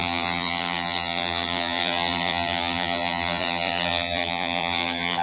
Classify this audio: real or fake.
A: fake